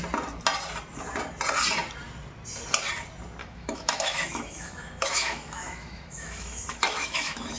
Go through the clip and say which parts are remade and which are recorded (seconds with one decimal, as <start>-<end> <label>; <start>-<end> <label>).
0.0-3.4 recorded; 3.4-7.6 remade

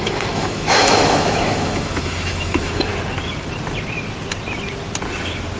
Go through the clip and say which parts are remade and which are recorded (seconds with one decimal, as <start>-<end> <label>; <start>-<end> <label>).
0.0-2.9 remade; 2.9-5.6 recorded

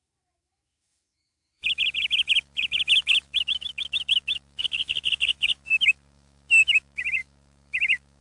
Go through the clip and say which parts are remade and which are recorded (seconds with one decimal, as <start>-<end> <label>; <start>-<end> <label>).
0.0-8.2 remade

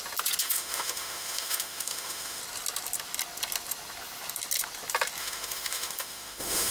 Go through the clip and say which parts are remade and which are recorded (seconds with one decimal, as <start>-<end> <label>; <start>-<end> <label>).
0.0-0.4 recorded; 0.4-2.4 remade; 2.4-5.2 recorded; 5.2-6.7 remade

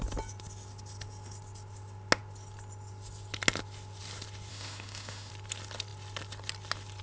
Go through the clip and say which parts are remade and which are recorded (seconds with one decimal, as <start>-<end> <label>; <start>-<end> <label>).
0.0-4.5 recorded; 4.5-5.3 remade; 5.3-7.0 recorded

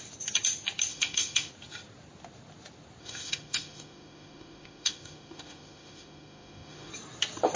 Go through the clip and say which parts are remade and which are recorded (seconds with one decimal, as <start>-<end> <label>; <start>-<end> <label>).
0.0-0.9 recorded; 0.9-1.5 remade; 1.5-3.0 recorded; 3.0-6.9 remade; 6.9-7.6 recorded

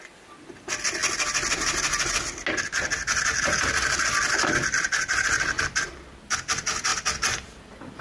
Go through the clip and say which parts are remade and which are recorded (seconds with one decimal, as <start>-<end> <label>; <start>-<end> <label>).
0.0-8.0 recorded

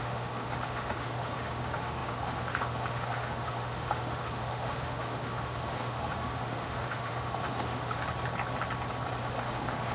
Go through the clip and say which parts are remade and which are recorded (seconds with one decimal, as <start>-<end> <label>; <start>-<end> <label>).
0.0-8.0 remade; 8.0-9.2 recorded; 9.2-9.9 remade